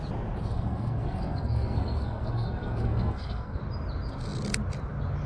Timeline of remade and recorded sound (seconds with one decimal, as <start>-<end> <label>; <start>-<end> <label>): 0.0-0.4 recorded; 0.4-3.6 remade; 3.6-5.3 recorded

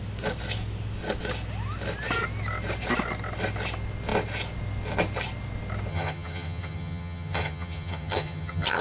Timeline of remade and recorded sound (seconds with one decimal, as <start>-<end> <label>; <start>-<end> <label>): 0.0-5.9 recorded; 5.9-8.8 remade